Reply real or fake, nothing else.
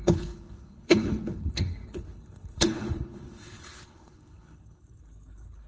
fake